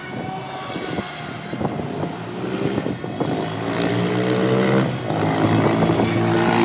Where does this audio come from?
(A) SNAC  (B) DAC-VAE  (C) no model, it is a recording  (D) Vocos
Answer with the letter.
C